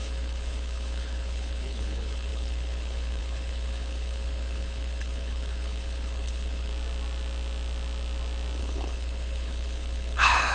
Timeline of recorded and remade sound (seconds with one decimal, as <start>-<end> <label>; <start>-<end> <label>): 0.0-6.7 remade; 6.7-8.6 recorded; 8.6-10.5 remade